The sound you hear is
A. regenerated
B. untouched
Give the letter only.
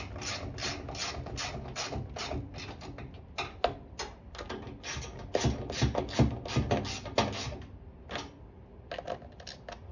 B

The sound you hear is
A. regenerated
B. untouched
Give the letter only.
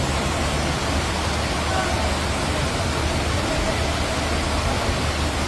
B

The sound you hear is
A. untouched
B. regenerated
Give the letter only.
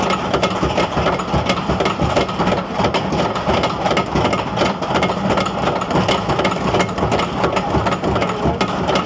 A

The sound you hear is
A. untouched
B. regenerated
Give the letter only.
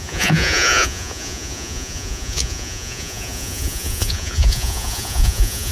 B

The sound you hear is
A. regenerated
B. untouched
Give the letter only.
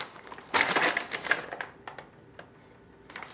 B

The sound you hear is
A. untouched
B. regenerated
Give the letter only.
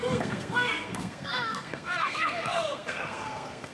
B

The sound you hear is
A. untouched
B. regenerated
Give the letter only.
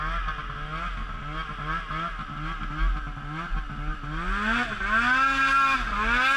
A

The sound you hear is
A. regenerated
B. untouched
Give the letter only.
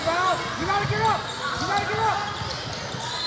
B